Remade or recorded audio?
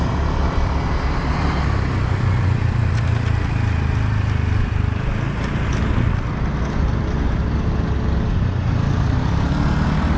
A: recorded